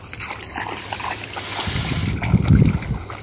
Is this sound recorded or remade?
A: recorded